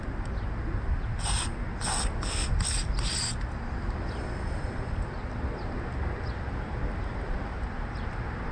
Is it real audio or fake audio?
real